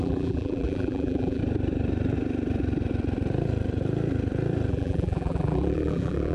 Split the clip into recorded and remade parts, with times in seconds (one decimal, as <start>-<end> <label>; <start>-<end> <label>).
0.0-1.4 remade; 1.4-4.7 recorded; 4.7-6.3 remade